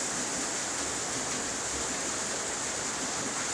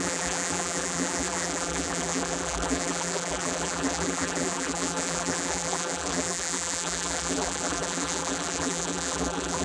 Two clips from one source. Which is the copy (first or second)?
second